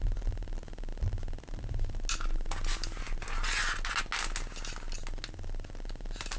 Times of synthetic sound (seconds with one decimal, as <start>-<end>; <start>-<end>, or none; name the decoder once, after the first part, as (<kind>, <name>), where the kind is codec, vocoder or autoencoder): none